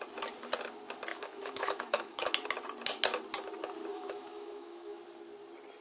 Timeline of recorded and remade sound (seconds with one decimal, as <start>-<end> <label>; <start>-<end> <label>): 0.0-1.1 recorded; 1.1-2.2 remade; 2.2-3.9 recorded; 3.9-5.0 remade; 5.0-5.8 recorded